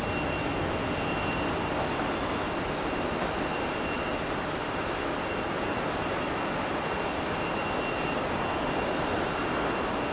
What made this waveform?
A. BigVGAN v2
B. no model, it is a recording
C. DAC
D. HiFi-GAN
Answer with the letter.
B